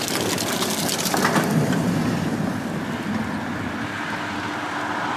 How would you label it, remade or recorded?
recorded